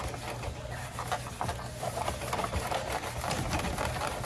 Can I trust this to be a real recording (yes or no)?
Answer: yes